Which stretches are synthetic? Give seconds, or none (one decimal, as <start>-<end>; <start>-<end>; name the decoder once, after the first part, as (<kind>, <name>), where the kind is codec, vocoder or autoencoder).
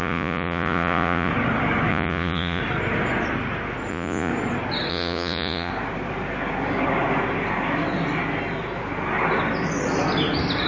0.0-1.3 (vocoder, Vocos); 1.9-2.6; 3.9-4.3; 4.9-5.7